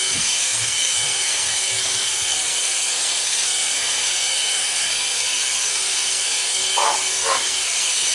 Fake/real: fake